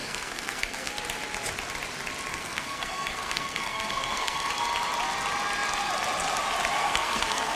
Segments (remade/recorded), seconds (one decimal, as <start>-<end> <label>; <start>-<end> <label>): 0.0-0.9 remade; 0.9-2.3 recorded; 2.3-4.5 remade; 4.5-6.8 recorded; 6.8-7.6 remade